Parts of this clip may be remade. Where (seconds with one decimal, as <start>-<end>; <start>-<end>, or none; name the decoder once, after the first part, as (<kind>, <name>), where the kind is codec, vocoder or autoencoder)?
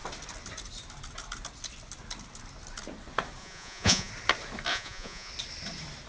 3.4-4.1 (vocoder, Vocos); 4.7-5.3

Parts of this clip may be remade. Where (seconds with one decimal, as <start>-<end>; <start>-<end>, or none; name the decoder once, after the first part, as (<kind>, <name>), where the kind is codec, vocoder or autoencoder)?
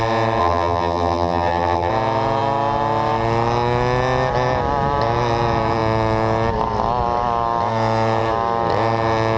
0.4-1.9 (vocoder, BigVGAN v2)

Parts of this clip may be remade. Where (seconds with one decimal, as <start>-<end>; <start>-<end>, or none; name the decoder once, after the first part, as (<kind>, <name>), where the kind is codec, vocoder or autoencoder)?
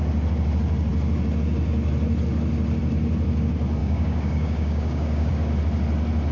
3.8-5.3 (codec, DAC)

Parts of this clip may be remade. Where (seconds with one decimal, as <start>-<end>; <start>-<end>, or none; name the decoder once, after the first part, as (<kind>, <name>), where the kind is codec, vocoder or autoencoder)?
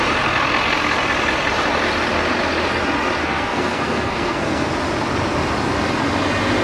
3.2-4.7 (codec, SNAC)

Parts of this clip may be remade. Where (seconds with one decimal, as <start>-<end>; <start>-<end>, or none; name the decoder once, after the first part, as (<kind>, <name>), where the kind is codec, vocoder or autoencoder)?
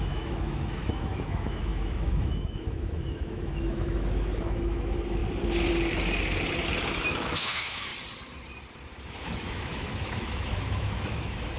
0.0-5.2 (autoencoder, DAC-VAE); 6.9-7.9; 9.1-11.6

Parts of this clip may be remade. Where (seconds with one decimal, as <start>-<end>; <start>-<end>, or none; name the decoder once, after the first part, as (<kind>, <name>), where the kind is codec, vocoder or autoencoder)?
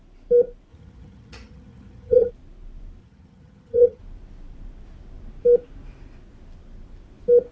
0.7-2.3 (vocoder, HiFi-GAN); 3.0-4.0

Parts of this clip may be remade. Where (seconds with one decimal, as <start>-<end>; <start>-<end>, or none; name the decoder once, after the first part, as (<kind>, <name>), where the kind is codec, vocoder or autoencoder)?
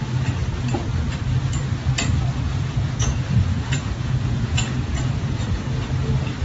2.3-5.6 (vocoder, Vocos)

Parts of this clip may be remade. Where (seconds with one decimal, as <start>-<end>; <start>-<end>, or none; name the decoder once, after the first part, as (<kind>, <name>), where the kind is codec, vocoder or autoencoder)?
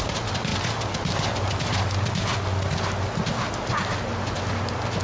none